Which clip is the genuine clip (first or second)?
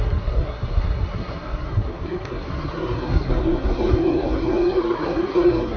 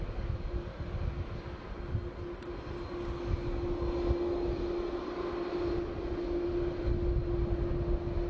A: second